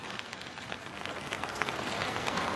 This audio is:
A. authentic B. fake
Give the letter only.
B